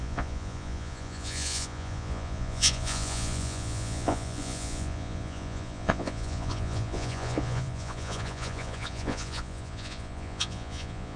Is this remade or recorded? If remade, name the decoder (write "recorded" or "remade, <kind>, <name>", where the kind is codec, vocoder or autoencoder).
remade, vocoder, Vocos